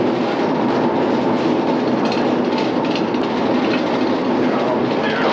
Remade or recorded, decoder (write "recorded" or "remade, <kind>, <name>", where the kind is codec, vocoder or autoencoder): recorded